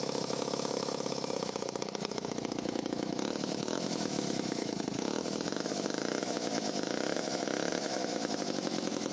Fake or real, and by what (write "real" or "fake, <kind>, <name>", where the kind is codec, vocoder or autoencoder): fake, autoencoder, DAC-VAE